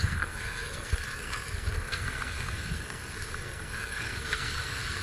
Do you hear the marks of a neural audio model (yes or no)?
yes